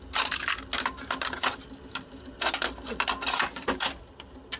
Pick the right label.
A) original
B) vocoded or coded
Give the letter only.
A